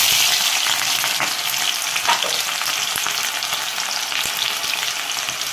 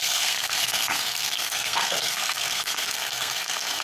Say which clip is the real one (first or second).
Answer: first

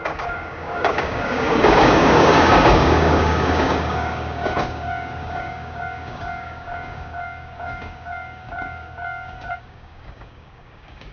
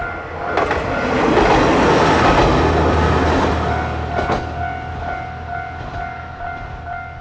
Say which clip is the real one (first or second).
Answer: second